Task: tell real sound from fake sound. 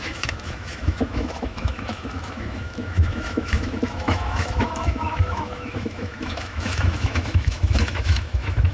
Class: fake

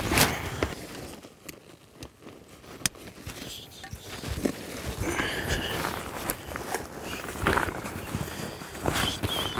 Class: real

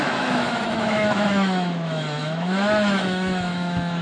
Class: fake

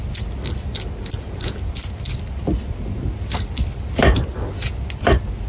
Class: real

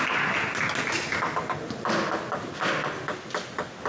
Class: real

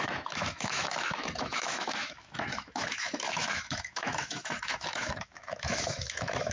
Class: fake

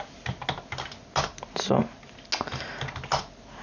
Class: real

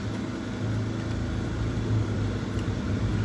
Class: real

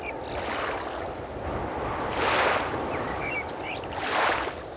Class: real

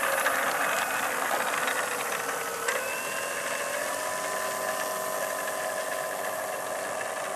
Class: real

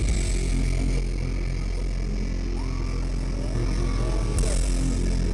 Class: real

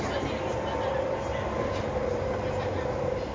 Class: real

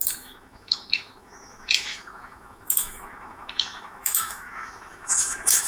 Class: fake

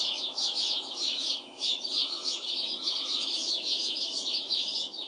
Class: fake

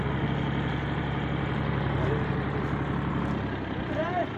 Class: real